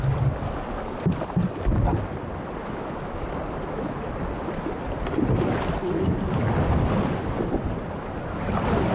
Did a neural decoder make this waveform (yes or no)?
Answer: no